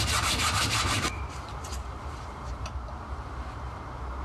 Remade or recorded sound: remade